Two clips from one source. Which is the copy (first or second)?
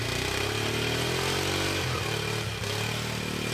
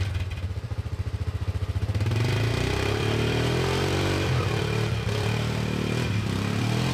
second